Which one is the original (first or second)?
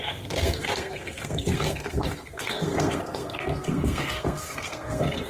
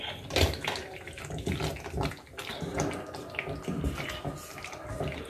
second